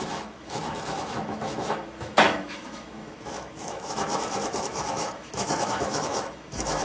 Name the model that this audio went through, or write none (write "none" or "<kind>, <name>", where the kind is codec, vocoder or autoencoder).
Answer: autoencoder, DAC-VAE